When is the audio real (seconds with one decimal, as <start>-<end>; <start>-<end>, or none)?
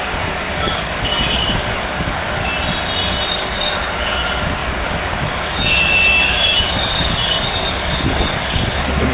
2.5-3.3